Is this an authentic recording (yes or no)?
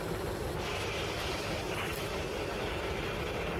yes